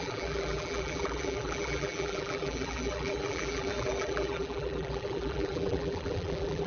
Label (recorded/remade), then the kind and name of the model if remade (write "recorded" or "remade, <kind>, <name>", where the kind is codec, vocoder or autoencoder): remade, vocoder, BigVGAN v2